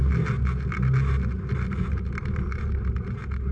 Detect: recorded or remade recorded